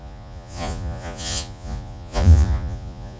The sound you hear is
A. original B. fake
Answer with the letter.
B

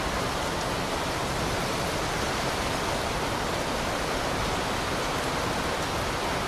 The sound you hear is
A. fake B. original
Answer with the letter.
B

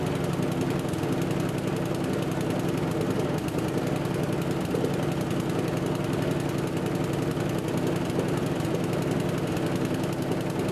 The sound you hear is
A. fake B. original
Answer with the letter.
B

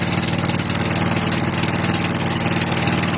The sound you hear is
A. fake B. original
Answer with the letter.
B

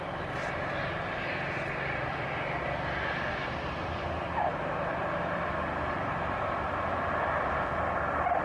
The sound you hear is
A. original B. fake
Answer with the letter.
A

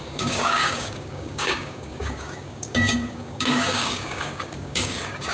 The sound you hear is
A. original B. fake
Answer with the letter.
B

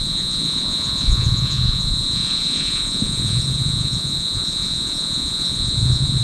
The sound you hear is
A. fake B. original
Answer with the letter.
A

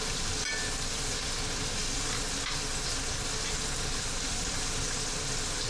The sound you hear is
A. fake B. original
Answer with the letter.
B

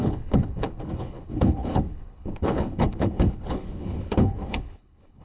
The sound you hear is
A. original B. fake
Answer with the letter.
B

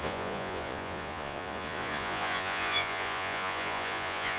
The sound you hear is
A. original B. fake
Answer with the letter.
B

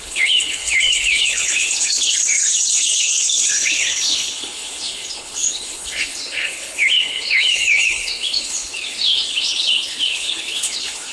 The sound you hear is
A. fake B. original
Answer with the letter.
A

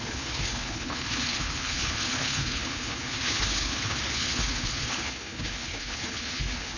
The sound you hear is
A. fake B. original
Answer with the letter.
A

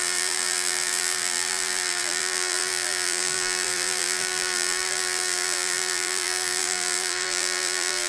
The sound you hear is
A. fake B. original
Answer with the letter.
A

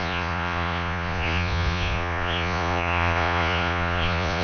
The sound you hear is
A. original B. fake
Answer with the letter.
B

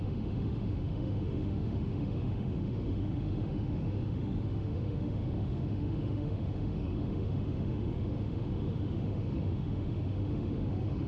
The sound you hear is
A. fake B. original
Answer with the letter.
A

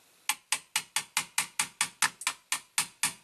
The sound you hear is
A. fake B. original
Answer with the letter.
B